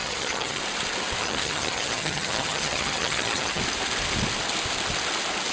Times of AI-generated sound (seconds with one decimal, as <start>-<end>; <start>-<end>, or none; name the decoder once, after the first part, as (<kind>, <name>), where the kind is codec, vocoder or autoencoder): 0.0-0.6 (vocoder, HiFi-GAN); 1.2-3.6

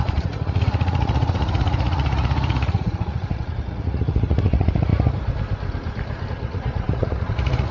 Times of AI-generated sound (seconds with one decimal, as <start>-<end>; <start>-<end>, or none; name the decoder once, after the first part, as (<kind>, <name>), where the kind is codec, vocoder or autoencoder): 0.0-4.9 (vocoder, Vocos); 6.3-7.7